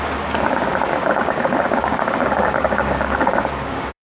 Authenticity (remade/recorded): remade